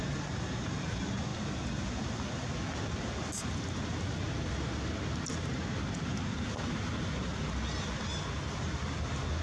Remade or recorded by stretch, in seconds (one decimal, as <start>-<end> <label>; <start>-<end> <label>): 0.0-9.4 recorded